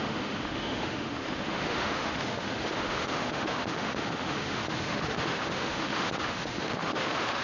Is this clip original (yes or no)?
no